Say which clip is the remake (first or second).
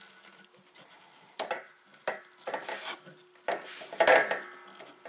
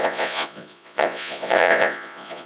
second